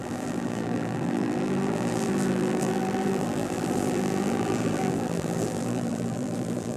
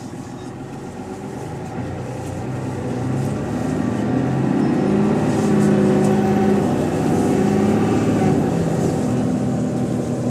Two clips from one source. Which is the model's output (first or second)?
first